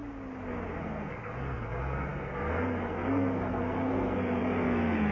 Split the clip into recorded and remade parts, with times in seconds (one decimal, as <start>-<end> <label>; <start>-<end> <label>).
0.0-0.8 recorded; 0.8-5.1 remade